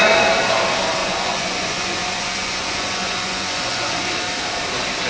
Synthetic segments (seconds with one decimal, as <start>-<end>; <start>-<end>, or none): 1.0-4.1